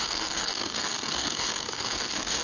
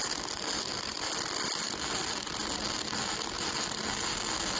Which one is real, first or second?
second